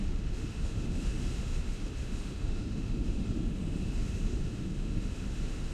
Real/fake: fake